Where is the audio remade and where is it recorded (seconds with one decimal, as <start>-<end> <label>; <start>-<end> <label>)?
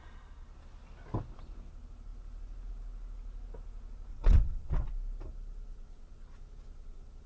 0.0-4.1 recorded; 4.1-4.9 remade; 4.9-7.3 recorded